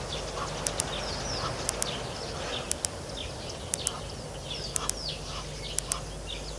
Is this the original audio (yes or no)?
yes